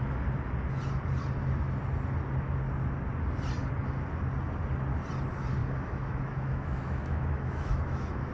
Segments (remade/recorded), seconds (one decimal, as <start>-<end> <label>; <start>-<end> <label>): 0.0-5.6 recorded; 5.6-8.3 remade